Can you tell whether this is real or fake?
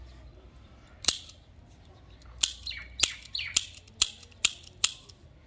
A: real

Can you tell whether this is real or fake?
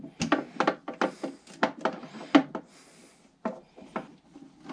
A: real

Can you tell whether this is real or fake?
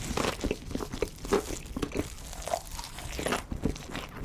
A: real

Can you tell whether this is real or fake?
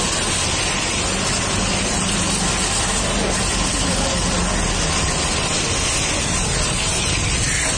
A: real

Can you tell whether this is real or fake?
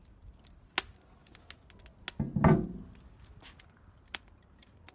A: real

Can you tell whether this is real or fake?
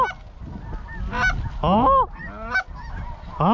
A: real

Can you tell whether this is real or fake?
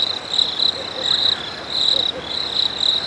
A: real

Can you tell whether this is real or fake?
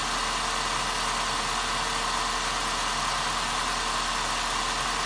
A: real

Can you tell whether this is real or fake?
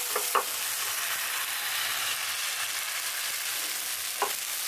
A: real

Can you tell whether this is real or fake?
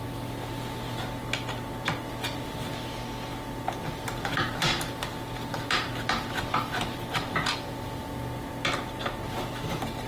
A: real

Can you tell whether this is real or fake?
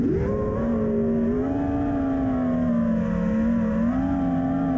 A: real